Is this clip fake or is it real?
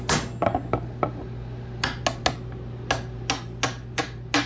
real